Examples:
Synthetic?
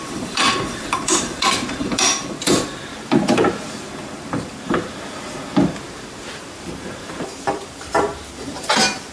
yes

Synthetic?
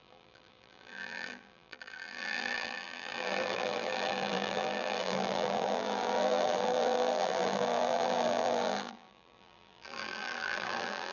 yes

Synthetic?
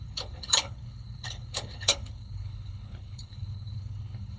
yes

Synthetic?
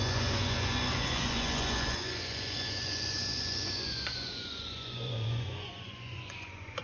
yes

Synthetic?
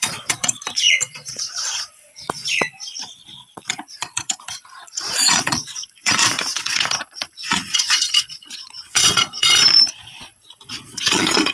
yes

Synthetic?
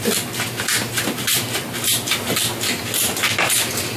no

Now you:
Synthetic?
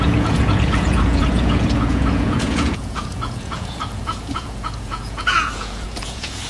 yes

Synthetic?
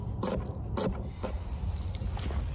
no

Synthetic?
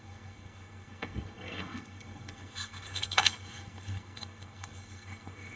yes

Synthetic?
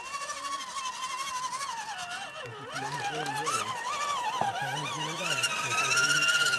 no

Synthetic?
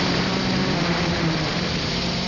yes